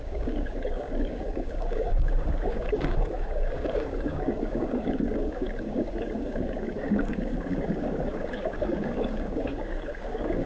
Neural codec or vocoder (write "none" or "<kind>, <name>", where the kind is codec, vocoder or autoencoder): codec, DAC